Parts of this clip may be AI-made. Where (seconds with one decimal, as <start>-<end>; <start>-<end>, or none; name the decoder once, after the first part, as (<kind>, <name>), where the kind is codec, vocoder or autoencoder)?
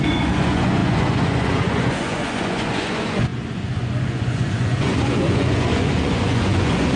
0.0-7.0 (vocoder, Vocos)